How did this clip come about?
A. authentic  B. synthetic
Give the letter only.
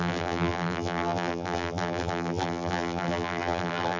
B